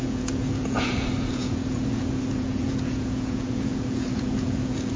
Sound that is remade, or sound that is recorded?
remade